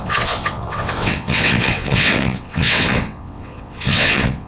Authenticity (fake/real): fake